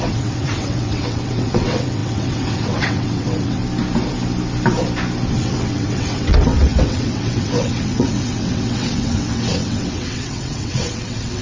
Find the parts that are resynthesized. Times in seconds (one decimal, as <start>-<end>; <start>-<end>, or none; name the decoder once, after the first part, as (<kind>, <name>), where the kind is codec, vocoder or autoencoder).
0.0-3.6 (vocoder, WaveNeXt); 5.3-11.4